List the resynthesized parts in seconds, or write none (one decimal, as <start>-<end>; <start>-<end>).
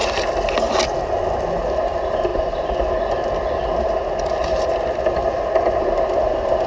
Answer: none